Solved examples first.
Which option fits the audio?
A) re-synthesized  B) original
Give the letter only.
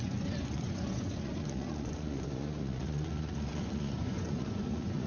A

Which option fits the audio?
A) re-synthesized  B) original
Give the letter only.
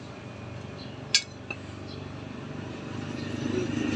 B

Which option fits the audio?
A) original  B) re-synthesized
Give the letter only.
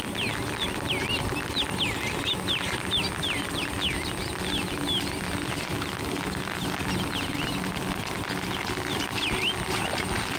A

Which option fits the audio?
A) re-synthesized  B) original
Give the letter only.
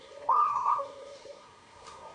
A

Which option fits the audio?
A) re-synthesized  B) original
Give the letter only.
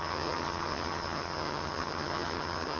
A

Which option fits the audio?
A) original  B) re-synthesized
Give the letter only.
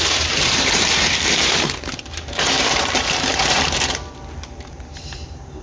B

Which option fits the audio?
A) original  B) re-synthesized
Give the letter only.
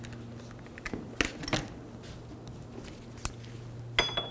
A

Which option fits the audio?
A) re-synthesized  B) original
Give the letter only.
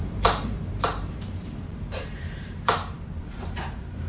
A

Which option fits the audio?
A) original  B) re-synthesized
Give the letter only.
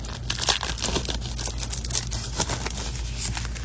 A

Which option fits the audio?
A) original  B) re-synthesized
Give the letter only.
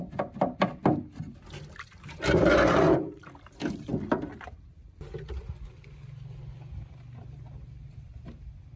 A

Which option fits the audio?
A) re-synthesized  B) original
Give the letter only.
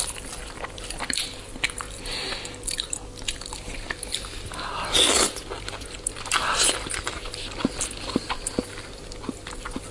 B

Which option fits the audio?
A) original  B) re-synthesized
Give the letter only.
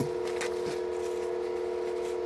A